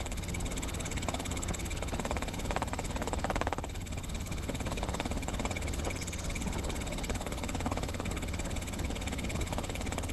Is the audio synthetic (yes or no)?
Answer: yes